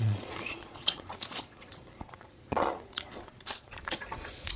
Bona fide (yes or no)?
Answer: no